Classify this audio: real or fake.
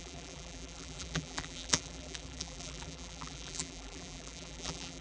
fake